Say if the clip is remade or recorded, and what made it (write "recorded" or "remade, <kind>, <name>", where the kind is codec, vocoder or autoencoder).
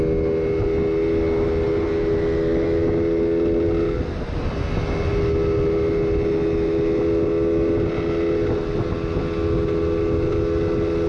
recorded